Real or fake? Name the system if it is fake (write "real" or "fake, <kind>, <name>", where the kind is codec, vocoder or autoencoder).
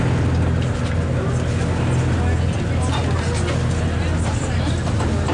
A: real